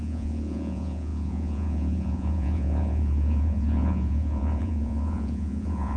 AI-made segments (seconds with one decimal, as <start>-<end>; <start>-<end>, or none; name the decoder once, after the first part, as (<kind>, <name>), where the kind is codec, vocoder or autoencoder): 0.0-6.0 (vocoder, Vocos)